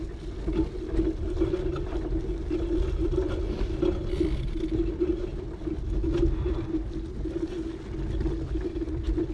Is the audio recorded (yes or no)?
yes